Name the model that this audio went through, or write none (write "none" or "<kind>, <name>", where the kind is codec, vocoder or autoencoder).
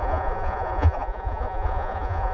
vocoder, Vocos